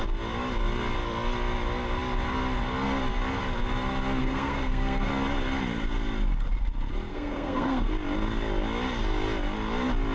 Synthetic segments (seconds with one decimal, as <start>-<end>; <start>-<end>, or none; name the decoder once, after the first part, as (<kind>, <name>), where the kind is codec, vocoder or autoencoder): 4.2-5.1 (codec, SNAC); 7.1-7.9